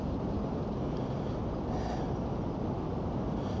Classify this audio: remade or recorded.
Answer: recorded